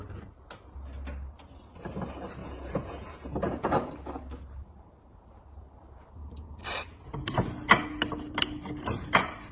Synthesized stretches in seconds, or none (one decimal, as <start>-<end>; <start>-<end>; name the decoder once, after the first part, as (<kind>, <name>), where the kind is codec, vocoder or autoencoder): 2.4-3.9 (vocoder, Vocos)